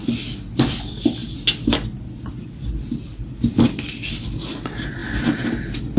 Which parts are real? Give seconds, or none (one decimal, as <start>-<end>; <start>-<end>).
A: 0.0-6.0